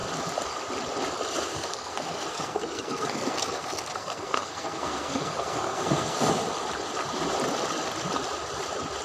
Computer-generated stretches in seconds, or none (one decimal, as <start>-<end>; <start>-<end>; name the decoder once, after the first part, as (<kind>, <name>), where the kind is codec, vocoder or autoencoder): 1.5-6.3 (codec, SNAC)